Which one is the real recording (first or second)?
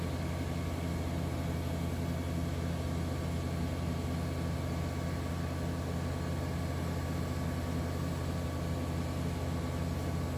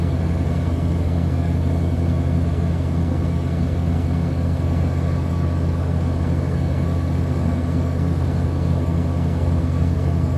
first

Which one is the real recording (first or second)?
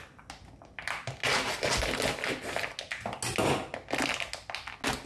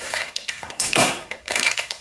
first